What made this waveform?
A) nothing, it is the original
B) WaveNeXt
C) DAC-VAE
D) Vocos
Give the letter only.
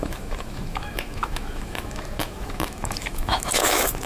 C